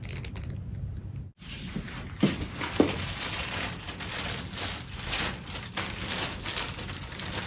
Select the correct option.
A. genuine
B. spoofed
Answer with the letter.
A